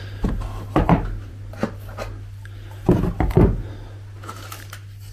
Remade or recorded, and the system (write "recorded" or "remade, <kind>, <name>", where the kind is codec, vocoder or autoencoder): recorded